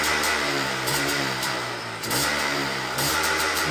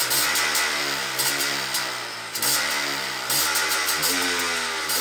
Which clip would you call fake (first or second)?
first